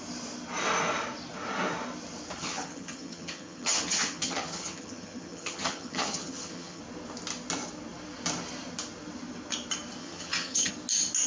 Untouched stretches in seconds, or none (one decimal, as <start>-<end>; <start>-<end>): 0.0-2.4; 6.8-10.0; 10.7-11.3